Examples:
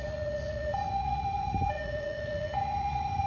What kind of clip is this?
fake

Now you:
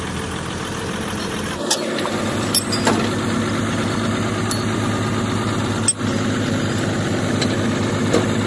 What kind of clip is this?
real